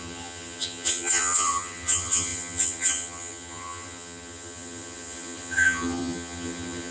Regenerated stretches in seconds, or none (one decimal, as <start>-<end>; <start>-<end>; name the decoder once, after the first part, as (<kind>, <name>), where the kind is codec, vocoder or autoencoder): 0.0-6.9 (vocoder, HiFi-GAN)